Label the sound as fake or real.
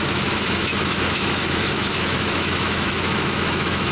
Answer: fake